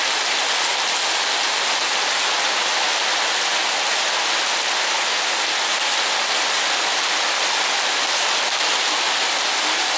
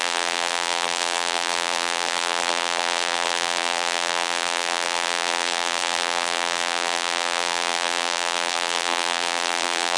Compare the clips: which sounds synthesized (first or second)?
second